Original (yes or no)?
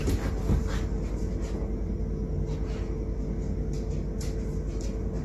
yes